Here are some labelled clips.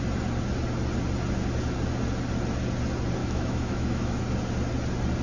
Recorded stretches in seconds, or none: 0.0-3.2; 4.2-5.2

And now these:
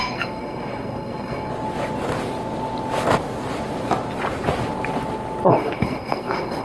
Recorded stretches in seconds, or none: 1.5-5.5

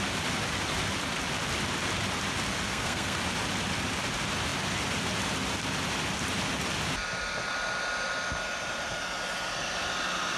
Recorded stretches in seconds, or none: 0.0-2.7; 3.2-10.4

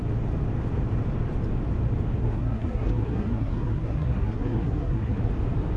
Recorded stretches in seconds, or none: 0.0-2.2; 5.3-5.8

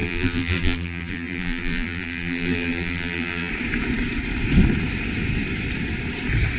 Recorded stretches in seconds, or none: 3.5-6.6

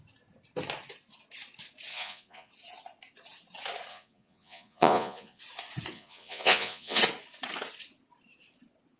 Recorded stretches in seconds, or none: 0.0-1.9; 2.5-3.9; 5.4-5.9; 7.0-9.0

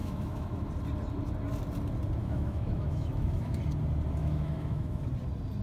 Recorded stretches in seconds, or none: 0.7-2.2; 3.6-4.2; 5.0-5.6